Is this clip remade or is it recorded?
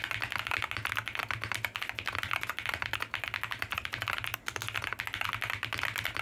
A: recorded